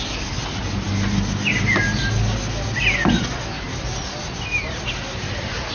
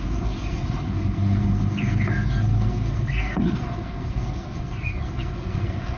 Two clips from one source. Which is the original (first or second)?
first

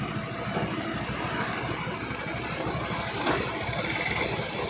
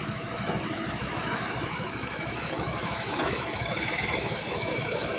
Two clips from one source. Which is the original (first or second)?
first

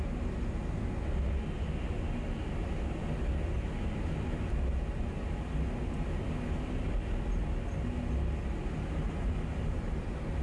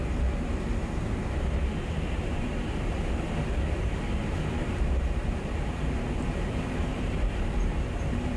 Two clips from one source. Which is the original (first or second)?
first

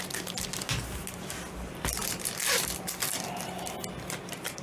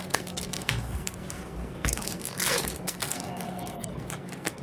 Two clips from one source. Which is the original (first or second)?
first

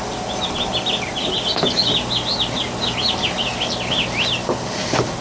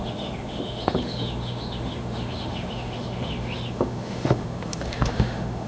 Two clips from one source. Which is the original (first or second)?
first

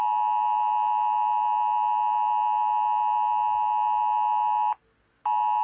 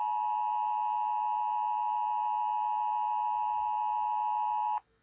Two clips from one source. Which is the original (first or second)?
first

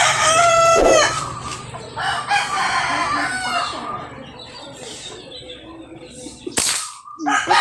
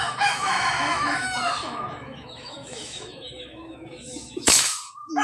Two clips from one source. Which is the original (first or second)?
first